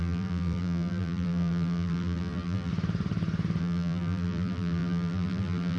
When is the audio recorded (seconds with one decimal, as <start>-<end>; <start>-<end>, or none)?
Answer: 2.7-3.6

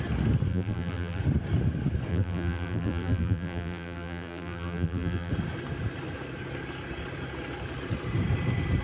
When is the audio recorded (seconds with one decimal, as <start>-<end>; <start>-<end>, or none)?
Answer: 0.0-0.5; 1.2-2.1; 5.3-8.8

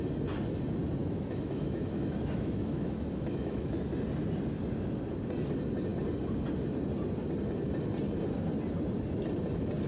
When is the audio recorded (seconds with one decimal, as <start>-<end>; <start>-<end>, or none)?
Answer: 0.0-1.0; 3.8-9.9

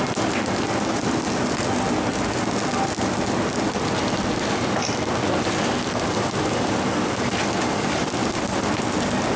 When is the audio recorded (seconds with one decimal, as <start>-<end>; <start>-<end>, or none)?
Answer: 0.0-9.4

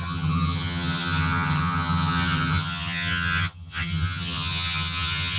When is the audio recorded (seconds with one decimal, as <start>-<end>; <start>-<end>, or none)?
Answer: none

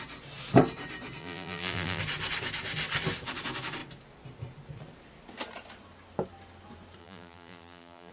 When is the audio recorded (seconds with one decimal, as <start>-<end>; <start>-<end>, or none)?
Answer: 0.0-1.2; 2.0-7.0

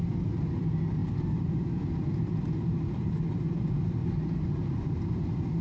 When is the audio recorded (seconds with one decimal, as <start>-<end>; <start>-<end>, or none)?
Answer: 0.0-5.6